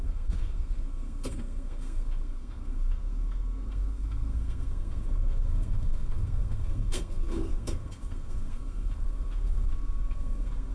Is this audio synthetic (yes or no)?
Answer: yes